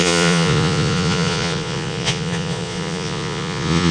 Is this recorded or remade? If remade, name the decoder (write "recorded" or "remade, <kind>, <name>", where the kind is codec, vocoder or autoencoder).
remade, vocoder, Vocos